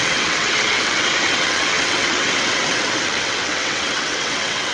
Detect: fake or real fake